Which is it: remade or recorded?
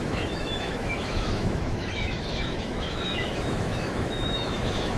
remade